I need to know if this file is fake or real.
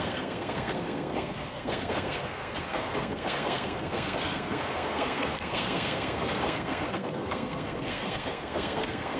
fake